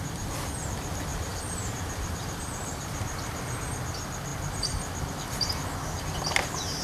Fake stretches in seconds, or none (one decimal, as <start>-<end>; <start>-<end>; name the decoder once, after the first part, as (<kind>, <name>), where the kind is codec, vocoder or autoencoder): 1.1-2.3 (vocoder, BigVGAN v2); 2.7-3.4